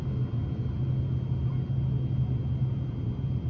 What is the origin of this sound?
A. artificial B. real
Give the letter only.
B